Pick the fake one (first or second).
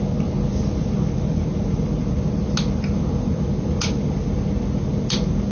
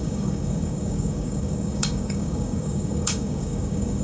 second